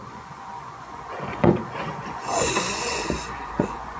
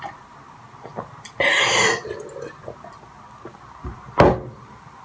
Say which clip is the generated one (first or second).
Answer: first